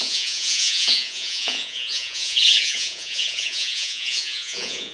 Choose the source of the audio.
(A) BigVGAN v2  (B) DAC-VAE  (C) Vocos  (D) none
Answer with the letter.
C